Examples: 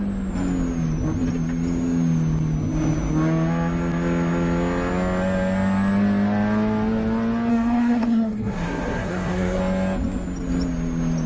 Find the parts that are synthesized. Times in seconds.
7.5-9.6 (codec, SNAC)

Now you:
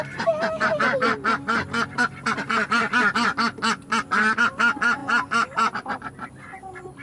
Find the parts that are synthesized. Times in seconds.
none

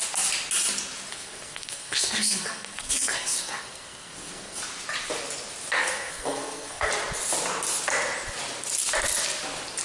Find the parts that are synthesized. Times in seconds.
1.1-4.6 (codec, SNAC); 5.8-6.9

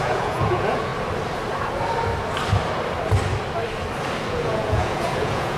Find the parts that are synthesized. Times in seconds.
0.0-0.9 (vocoder, Vocos); 4.3-5.6

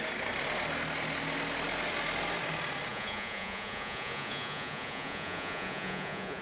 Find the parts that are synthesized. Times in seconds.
2.9-6.4 (vocoder, Vocos)